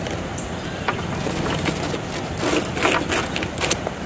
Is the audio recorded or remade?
recorded